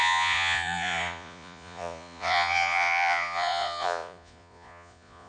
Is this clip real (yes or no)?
no